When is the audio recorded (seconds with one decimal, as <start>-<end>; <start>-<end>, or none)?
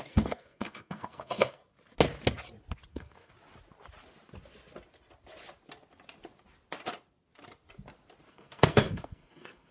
1.6-2.9; 3.3-8.3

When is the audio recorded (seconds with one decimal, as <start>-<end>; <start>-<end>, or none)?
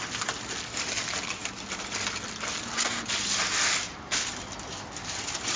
0.0-5.6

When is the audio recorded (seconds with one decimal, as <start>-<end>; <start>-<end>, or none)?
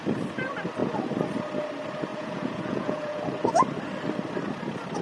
0.0-2.1; 3.2-5.0